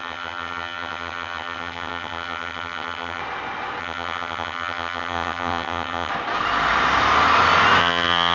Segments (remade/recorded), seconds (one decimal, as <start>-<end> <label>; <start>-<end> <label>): 0.0-3.2 remade; 3.2-3.8 recorded; 3.8-6.1 remade; 6.1-7.8 recorded; 7.8-8.3 remade